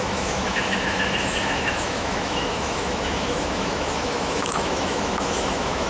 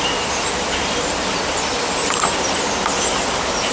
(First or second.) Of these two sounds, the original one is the second